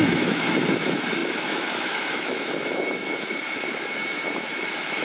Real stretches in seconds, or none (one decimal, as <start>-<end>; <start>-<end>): none